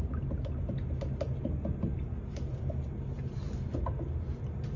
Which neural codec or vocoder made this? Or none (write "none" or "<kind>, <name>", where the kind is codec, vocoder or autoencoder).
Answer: none